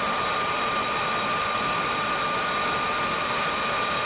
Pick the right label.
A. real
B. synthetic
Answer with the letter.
A